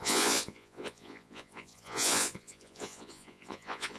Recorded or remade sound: remade